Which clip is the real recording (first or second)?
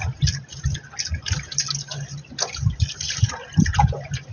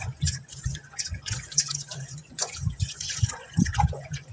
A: first